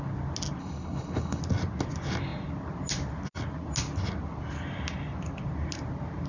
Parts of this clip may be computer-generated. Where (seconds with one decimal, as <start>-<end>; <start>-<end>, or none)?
0.6-1.4